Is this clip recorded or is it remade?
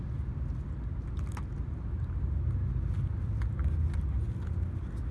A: recorded